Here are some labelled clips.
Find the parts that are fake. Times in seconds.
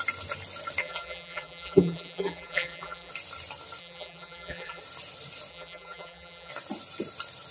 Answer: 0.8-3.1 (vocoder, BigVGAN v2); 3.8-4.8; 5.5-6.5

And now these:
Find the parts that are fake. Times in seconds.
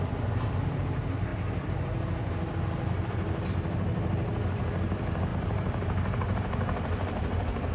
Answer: 5.3-7.7 (vocoder, BigVGAN v2)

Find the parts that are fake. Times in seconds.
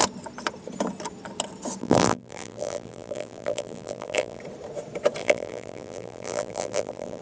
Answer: 1.8-4.4 (vocoder, BigVGAN v2); 5.2-7.2